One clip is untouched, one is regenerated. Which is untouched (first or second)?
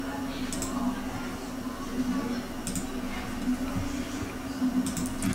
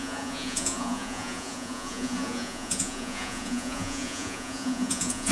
first